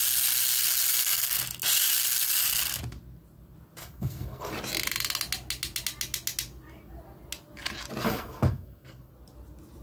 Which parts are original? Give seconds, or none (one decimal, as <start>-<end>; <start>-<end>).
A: 0.0-0.9; 1.4-3.8; 4.5-8.0; 9.1-9.8